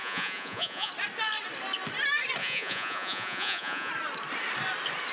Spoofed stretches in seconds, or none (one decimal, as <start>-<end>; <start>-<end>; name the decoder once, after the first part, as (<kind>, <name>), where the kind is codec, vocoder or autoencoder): 0.0-0.9 (vocoder, Vocos); 2.4-3.9